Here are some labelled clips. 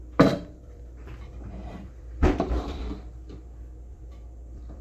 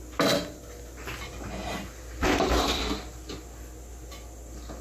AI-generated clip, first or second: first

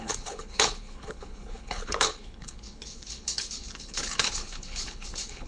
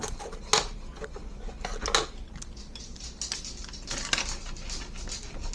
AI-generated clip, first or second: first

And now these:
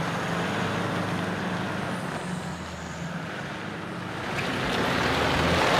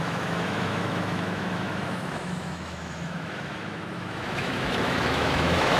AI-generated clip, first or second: second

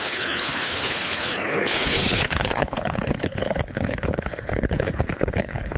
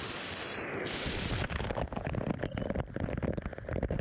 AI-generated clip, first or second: first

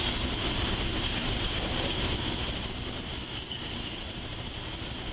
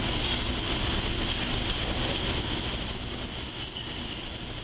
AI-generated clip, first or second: first